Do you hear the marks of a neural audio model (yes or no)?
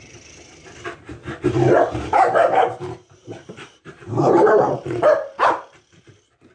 yes